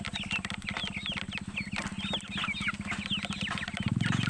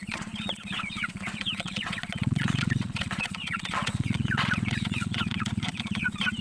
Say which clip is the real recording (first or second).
first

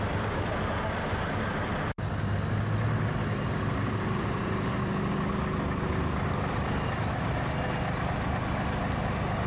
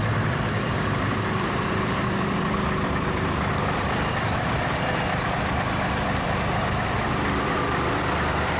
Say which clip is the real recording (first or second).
first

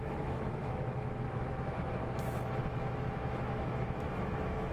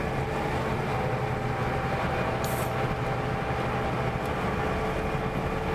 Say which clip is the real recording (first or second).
second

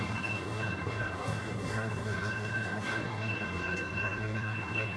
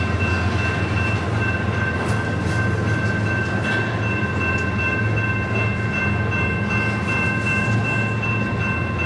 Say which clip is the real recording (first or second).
second